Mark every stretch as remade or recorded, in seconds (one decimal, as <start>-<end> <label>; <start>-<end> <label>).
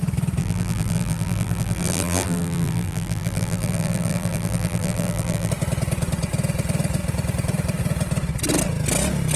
0.0-0.4 recorded; 0.4-5.5 remade; 5.5-9.4 recorded